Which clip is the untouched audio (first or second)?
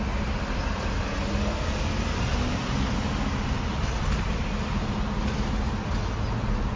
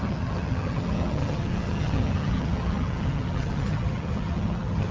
first